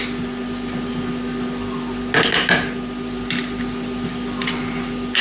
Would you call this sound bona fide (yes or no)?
yes